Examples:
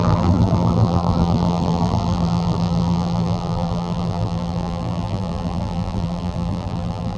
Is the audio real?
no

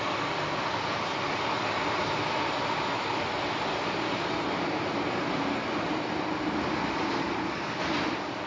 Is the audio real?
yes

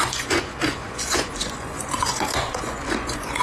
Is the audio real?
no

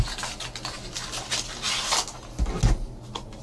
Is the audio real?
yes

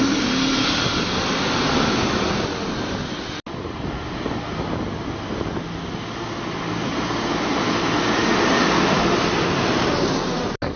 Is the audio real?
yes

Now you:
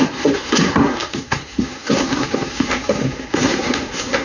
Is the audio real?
no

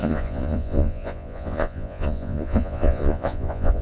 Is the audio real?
no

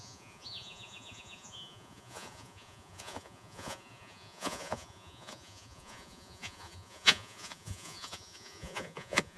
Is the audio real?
no